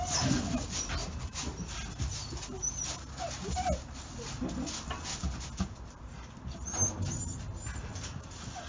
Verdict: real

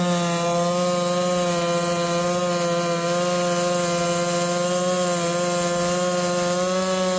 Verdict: real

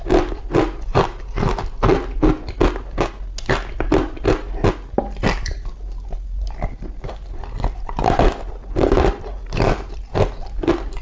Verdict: real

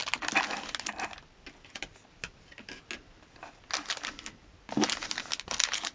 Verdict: real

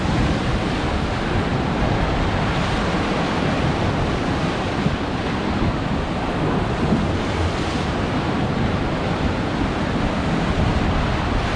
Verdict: real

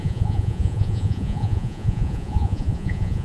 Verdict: fake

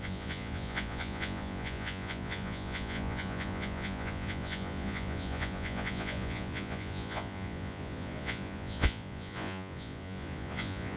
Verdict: fake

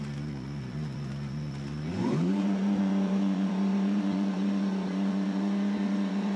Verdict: fake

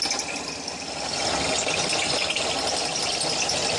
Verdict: real